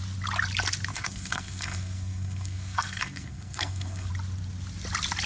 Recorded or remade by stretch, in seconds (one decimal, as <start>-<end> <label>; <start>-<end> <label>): 0.0-0.9 recorded; 0.9-4.1 remade; 4.1-5.3 recorded